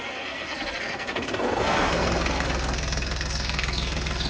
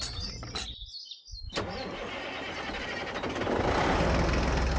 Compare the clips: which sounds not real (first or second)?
first